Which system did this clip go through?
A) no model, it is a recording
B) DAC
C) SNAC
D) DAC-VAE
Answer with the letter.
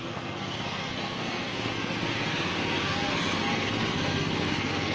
C